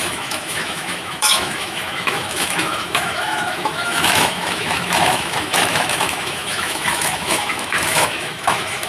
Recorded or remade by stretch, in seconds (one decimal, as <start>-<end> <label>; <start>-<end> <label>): 0.0-8.9 remade